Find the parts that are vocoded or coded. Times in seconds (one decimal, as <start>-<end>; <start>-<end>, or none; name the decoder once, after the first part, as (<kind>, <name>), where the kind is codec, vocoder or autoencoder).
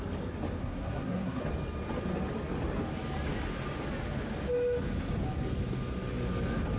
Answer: 0.6-1.4 (codec, SNAC)